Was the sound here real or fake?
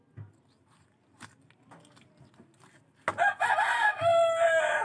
real